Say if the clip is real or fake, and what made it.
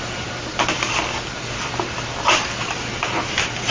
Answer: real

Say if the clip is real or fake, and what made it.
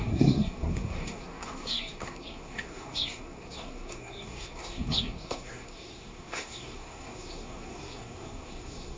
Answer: fake, codec, SNAC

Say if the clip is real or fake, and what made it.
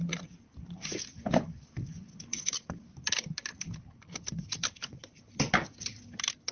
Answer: real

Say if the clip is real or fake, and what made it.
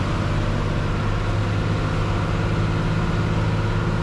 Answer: real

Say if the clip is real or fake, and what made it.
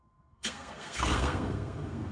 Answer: fake, codec, SNAC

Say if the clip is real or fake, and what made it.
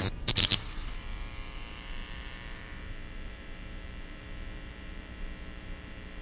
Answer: fake, vocoder, BigVGAN v2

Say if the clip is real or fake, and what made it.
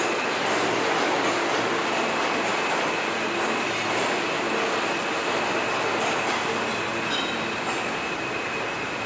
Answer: real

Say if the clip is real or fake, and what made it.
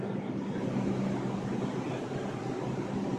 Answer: real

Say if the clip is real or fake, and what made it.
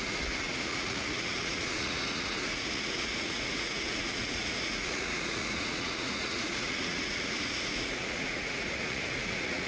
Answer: fake, vocoder, Vocos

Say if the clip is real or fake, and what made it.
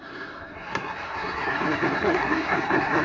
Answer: fake, codec, SNAC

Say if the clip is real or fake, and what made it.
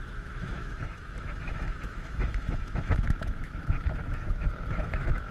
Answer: fake, autoencoder, DAC-VAE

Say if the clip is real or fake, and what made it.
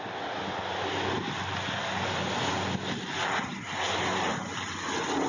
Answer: real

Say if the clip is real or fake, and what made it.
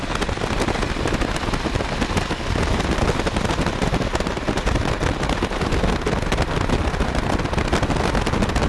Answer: real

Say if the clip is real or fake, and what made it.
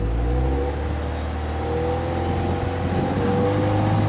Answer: real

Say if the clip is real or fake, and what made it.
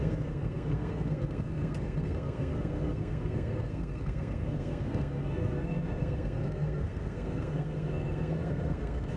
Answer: fake, codec, SNAC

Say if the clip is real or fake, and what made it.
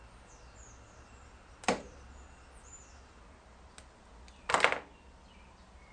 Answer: real